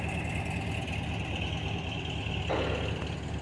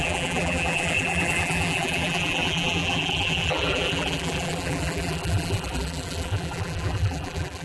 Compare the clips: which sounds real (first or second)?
first